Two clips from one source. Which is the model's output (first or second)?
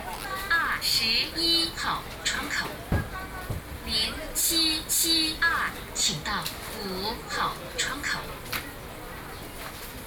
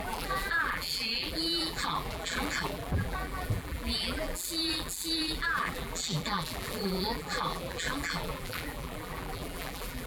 second